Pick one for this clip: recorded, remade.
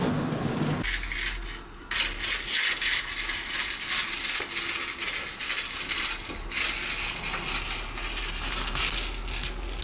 recorded